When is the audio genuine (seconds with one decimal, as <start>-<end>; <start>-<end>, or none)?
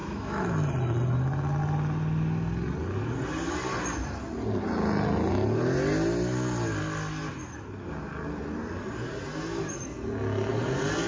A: 0.5-11.1